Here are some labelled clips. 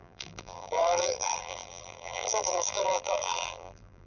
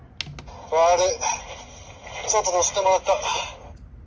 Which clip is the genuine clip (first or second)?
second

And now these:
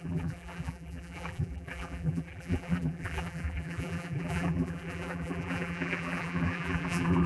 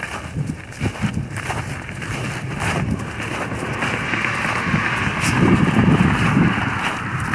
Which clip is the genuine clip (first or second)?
second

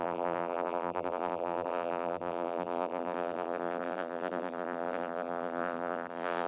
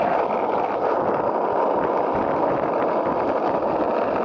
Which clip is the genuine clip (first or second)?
second